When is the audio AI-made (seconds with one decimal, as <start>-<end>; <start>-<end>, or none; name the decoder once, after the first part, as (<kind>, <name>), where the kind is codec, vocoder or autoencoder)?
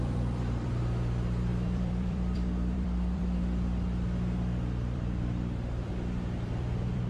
0.0-7.1 (vocoder, BigVGAN v2)